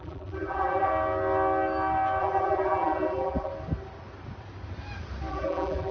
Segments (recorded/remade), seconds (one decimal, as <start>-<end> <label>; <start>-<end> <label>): 0.0-0.9 remade; 0.9-2.2 recorded; 2.2-3.5 remade; 3.5-5.3 recorded; 5.3-5.9 remade

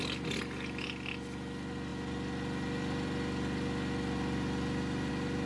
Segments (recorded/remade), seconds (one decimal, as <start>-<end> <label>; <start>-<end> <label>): 0.0-5.5 recorded